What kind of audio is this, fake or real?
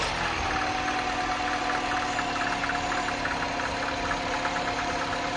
real